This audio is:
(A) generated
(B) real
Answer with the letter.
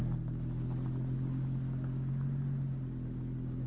B